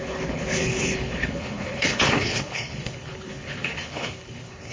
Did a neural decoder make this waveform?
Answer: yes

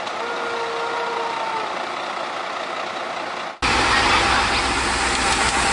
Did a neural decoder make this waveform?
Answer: no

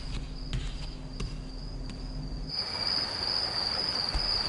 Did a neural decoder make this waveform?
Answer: no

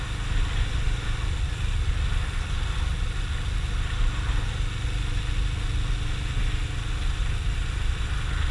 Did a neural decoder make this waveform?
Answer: no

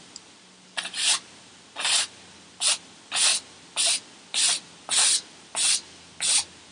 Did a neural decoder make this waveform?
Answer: no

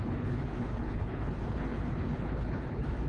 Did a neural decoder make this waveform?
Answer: yes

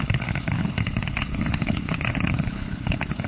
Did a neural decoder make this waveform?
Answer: yes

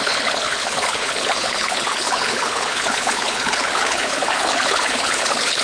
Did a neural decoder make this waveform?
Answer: yes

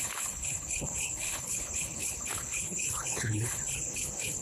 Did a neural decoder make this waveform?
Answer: yes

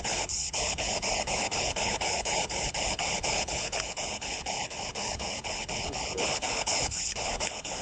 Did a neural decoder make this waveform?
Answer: yes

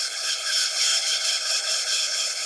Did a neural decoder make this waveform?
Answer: yes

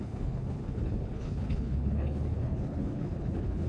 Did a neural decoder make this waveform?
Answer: yes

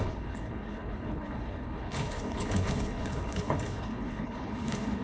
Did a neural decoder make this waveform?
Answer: yes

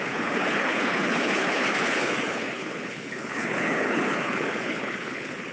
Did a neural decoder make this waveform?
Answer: yes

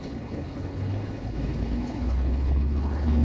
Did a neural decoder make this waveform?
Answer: yes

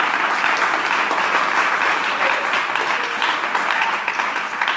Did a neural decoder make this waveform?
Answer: no